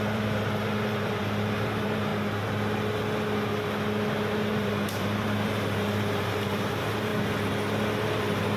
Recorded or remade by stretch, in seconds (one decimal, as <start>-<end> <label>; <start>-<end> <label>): 0.0-2.1 remade; 2.1-4.4 recorded; 4.4-7.1 remade; 7.1-8.2 recorded; 8.2-8.6 remade